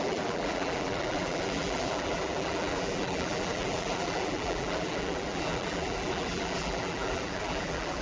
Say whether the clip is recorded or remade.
remade